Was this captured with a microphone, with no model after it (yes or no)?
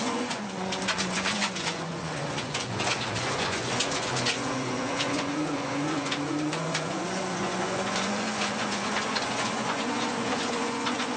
no